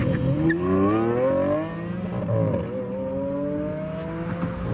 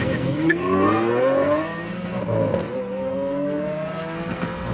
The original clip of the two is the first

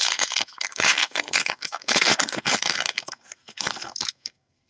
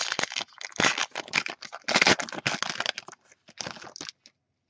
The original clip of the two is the second